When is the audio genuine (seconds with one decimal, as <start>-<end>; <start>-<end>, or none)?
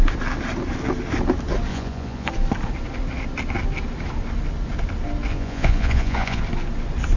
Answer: 0.0-1.7; 2.3-5.3; 6.4-7.2